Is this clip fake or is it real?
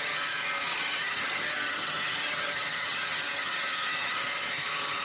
fake